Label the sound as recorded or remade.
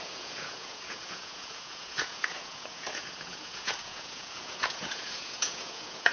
remade